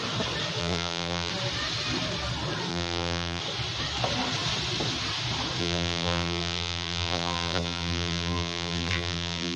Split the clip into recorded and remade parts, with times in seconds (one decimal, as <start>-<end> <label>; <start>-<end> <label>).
0.0-0.6 recorded; 0.6-1.3 remade; 1.3-2.7 recorded; 2.7-3.4 remade; 3.4-5.6 recorded; 5.6-9.6 remade